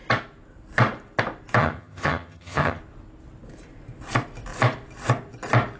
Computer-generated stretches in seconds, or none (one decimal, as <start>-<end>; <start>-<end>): 1.6-2.8

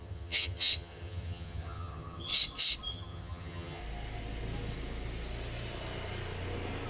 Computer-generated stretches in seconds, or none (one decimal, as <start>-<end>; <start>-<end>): 0.0-2.3; 2.9-3.8

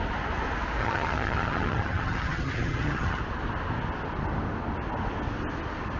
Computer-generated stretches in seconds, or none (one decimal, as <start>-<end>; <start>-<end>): 0.8-3.2

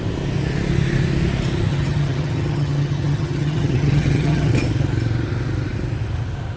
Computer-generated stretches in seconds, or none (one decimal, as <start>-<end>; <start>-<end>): 1.7-4.5

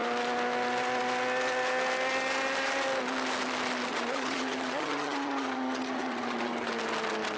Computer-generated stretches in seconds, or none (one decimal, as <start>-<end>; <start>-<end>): 3.9-6.7

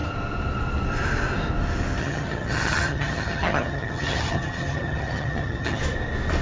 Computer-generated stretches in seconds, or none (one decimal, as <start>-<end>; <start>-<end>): 2.0-5.8

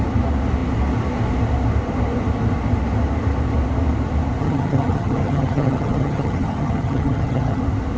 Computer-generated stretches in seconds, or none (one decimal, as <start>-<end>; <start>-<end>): 4.4-7.6